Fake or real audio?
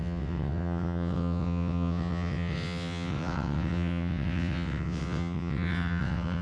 fake